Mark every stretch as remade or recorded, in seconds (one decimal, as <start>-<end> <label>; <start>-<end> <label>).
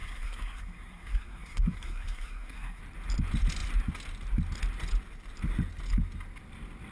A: 0.0-2.8 remade; 2.8-6.9 recorded